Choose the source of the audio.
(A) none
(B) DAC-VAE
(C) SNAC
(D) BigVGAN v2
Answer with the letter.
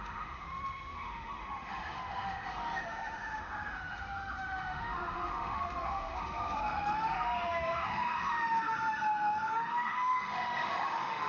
B